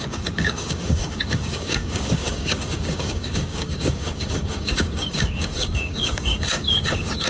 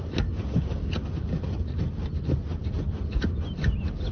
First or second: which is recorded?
second